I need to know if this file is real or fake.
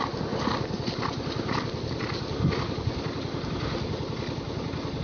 real